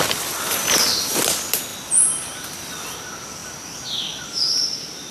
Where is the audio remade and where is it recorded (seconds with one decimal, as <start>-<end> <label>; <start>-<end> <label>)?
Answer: 0.0-5.1 recorded